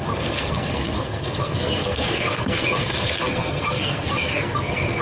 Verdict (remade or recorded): remade